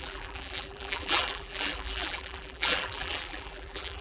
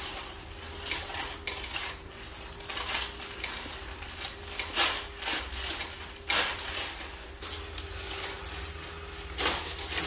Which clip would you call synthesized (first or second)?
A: first